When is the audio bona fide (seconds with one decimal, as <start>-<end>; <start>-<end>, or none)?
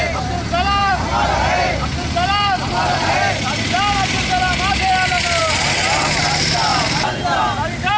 0.0-0.8; 4.6-6.7; 7.4-8.0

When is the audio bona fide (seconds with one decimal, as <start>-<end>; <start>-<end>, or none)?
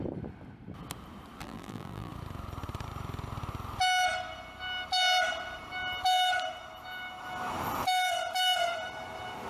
0.0-1.4; 2.1-9.5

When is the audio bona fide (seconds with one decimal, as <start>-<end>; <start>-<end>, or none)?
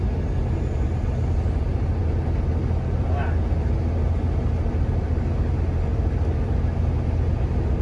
0.0-7.8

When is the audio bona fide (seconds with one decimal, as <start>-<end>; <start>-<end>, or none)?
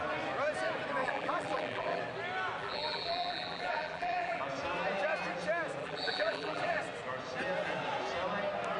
0.0-1.0; 2.0-2.6; 4.4-5.8; 6.8-8.8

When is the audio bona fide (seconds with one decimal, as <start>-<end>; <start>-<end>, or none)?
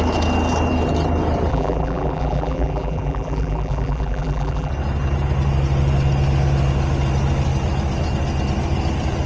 0.0-1.5; 4.7-9.3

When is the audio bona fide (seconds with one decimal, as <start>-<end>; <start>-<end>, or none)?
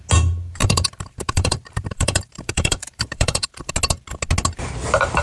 0.0-0.6; 3.7-5.2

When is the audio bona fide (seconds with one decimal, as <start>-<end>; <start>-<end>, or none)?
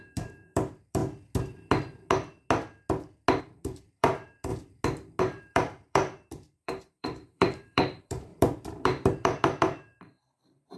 1.0-3.4; 4.5-5.2